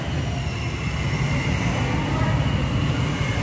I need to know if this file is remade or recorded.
recorded